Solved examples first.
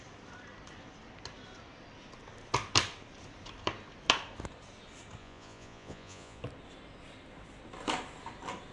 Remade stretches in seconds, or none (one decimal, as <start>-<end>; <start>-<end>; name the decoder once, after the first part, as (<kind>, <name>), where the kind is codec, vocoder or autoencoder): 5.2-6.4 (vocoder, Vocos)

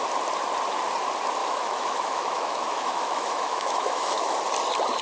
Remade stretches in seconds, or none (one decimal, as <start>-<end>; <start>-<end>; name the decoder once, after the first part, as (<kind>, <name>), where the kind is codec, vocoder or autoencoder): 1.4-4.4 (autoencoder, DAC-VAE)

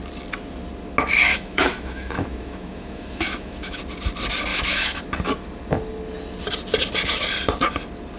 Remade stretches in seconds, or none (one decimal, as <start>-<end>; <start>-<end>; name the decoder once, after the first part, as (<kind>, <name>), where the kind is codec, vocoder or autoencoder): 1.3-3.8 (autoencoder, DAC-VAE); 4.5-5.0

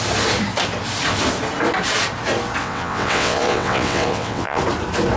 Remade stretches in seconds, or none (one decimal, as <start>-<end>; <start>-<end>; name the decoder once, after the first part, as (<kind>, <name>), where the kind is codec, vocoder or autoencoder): 2.6-4.6 (vocoder, WaveNeXt)

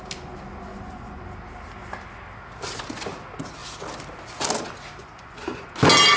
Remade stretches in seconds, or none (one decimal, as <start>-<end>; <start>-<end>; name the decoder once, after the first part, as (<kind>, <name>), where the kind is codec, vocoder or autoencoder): 0.7-1.2 (vocoder, Vocos); 5.0-5.7